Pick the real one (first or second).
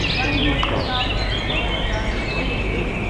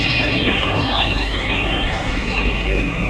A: first